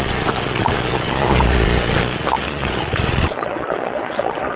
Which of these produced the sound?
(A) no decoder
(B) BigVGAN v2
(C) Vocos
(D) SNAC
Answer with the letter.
C